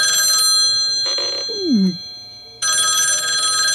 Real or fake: real